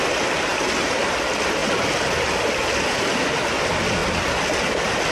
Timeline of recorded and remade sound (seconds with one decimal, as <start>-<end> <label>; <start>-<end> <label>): 0.0-5.1 recorded

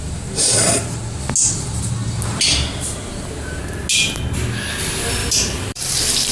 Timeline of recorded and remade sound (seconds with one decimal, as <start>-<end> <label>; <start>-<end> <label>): 0.0-0.4 recorded; 0.4-1.0 remade; 1.0-2.0 recorded; 2.0-3.6 remade; 3.6-5.2 recorded; 5.2-6.3 remade

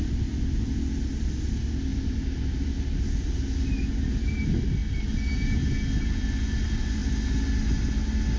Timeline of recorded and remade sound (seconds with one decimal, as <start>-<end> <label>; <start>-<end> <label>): 0.0-8.4 recorded

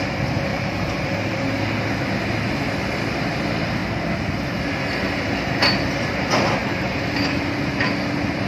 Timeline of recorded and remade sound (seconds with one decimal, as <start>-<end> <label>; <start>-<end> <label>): 0.0-0.5 recorded; 0.5-1.5 remade; 1.5-6.6 recorded; 6.6-7.4 remade; 7.4-8.5 recorded

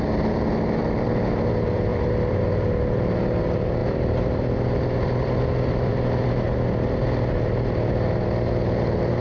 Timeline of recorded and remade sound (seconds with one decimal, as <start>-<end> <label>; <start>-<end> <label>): 0.0-1.9 recorded; 1.9-2.4 remade; 2.4-3.8 recorded; 3.8-5.9 remade; 5.9-9.2 recorded

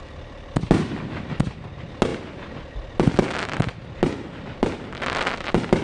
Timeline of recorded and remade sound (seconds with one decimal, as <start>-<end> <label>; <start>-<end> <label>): 0.0-5.8 recorded

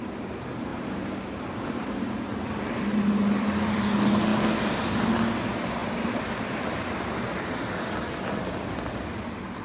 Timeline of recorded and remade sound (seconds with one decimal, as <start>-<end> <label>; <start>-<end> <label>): 0.0-0.7 recorded; 0.7-3.8 remade; 3.8-5.8 recorded; 5.8-8.1 remade; 8.1-9.6 recorded